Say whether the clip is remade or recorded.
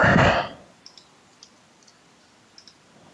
recorded